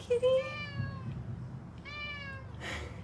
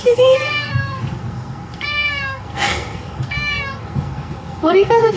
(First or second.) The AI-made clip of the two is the second